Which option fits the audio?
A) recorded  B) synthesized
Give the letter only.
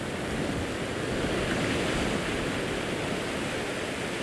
A